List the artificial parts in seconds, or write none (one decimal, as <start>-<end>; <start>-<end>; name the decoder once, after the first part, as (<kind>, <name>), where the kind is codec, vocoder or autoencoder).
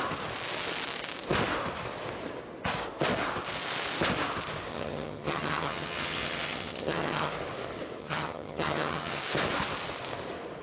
4.7-7.3 (vocoder, HiFi-GAN); 8.0-9.2